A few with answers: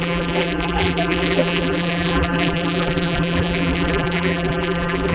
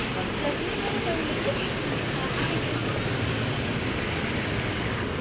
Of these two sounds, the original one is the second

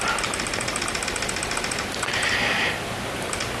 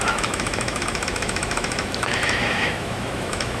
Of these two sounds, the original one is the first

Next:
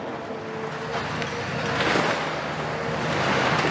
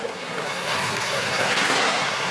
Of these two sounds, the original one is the first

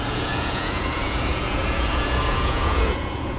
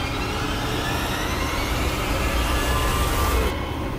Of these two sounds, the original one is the second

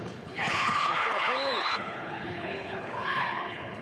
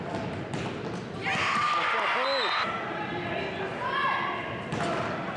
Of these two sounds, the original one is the second